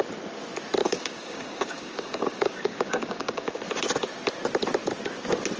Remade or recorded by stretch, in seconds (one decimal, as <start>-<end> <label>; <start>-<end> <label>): 0.0-0.8 recorded; 0.8-3.6 remade; 3.6-5.6 recorded

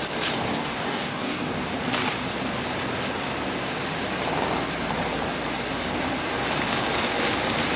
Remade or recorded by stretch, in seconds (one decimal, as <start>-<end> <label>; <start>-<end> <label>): 0.0-0.5 recorded; 0.5-1.5 remade; 1.5-7.8 recorded